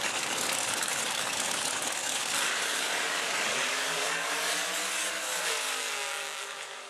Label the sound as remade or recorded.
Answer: remade